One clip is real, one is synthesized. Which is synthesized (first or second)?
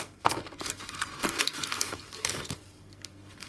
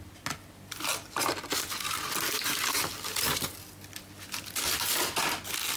first